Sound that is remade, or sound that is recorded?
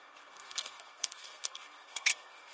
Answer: remade